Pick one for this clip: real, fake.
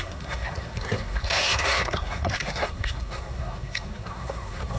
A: fake